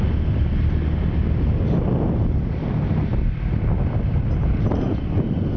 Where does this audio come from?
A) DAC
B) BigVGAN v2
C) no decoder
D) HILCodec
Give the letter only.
C